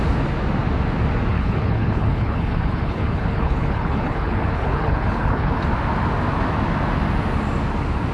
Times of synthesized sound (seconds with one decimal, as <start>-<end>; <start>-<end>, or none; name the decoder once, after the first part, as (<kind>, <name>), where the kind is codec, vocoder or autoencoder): 1.3-5.6 (codec, HILCodec)